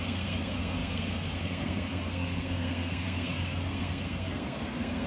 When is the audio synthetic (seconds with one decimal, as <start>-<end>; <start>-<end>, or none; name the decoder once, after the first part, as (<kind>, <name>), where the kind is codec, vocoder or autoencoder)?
0.0-5.1 (codec, SNAC)